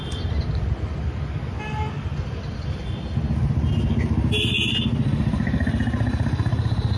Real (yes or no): yes